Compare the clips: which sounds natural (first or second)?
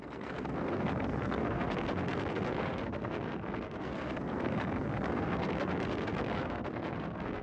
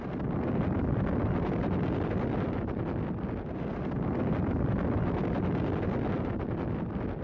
second